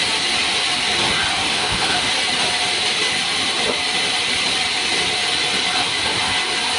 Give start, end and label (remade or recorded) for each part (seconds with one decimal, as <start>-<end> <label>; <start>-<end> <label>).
0.0-1.5 recorded; 1.5-2.1 remade; 2.1-6.8 recorded